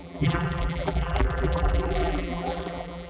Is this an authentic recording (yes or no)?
no